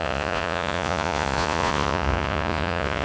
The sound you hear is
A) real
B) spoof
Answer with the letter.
B